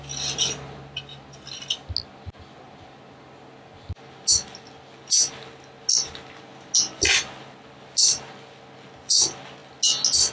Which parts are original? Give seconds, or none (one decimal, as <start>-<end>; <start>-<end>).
0.0-10.3